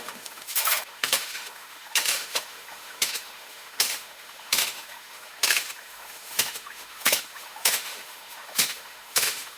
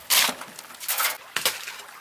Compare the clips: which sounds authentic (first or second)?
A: second